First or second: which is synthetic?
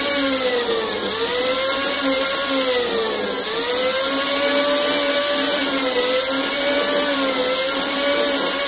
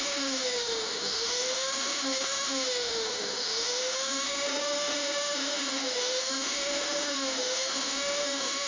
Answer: second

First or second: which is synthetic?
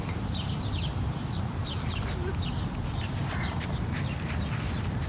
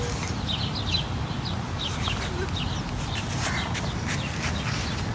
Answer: first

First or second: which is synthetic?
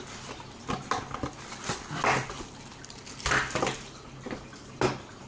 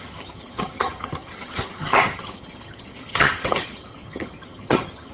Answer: second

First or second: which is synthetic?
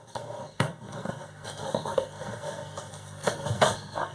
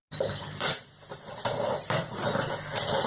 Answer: first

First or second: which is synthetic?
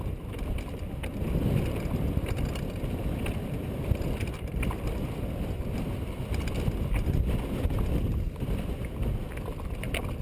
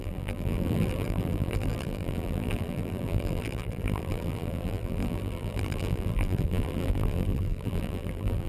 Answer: second